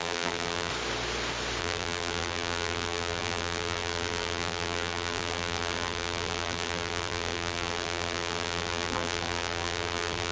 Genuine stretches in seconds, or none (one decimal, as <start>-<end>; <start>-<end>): 0.7-1.6